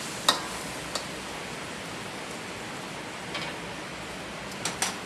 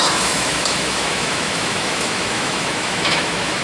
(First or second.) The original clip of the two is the first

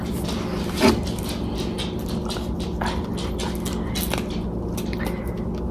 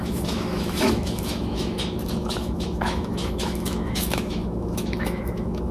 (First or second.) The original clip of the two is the first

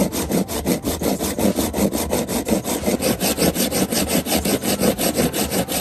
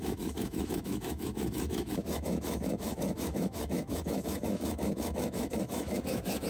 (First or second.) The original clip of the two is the first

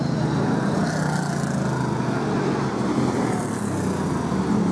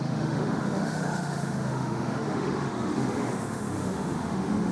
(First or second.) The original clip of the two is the first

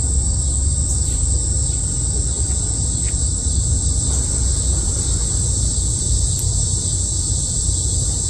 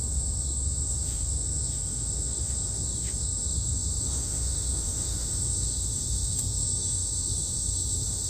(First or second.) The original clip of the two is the first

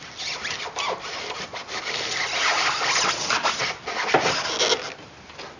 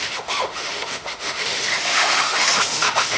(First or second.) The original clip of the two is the first